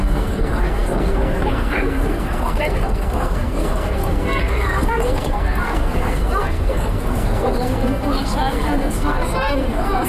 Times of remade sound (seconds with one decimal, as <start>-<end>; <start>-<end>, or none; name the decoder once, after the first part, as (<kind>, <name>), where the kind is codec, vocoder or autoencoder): 0.0-10.1 (codec, SNAC)